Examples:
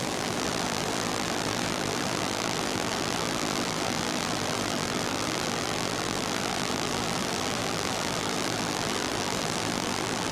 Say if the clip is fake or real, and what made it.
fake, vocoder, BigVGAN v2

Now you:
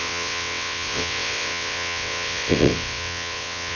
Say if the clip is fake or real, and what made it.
fake, vocoder, WaveNeXt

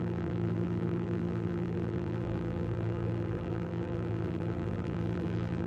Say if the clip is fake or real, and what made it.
fake, vocoder, BigVGAN v2